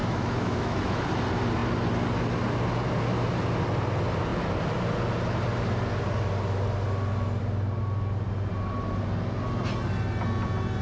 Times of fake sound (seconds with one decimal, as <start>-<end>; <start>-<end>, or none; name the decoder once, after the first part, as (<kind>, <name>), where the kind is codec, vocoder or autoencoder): 0.0-1.0 (autoencoder, DAC-VAE)